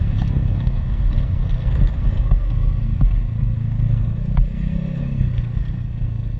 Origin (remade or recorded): remade